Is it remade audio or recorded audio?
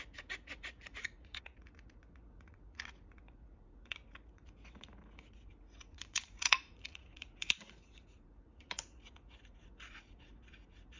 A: remade